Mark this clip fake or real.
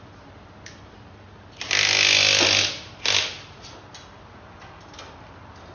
real